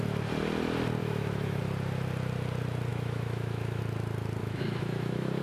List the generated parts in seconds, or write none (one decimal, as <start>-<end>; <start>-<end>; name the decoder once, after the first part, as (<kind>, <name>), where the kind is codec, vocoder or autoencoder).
1.0-1.6 (autoencoder, DAC-VAE); 2.9-3.8; 4.4-5.4